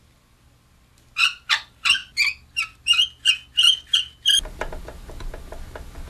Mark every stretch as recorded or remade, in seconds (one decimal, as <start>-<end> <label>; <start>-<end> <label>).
0.0-6.1 recorded